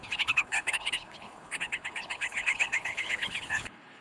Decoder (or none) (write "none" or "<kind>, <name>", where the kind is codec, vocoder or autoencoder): codec, HILCodec